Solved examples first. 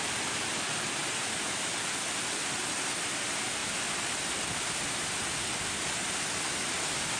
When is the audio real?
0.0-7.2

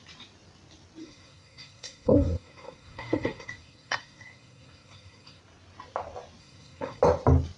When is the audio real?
0.0-1.0; 5.4-6.4; 7.0-7.6